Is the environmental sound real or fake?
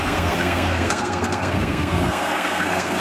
fake